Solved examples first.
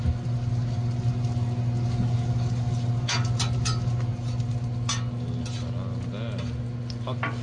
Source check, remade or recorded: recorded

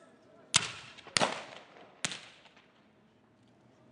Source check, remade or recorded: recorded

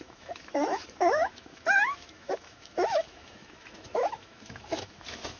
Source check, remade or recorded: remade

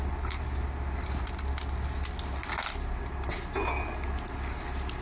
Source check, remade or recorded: recorded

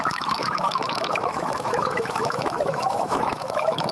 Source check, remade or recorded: remade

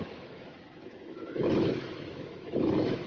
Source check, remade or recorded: remade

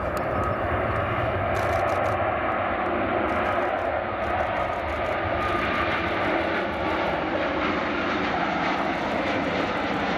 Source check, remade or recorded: recorded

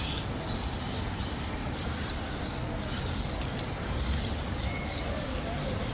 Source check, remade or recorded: recorded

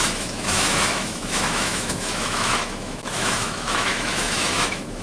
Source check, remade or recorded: remade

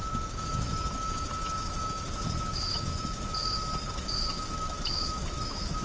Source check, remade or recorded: remade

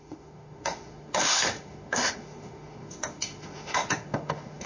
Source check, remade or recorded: remade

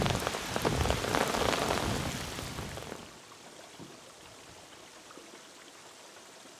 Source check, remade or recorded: recorded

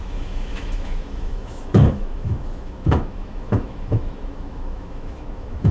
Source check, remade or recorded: remade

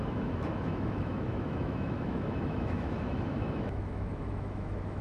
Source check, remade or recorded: remade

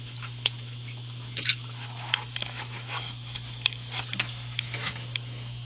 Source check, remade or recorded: remade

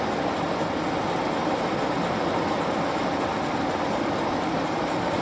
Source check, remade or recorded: recorded